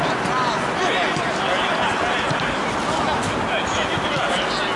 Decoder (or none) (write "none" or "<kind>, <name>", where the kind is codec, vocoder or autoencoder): none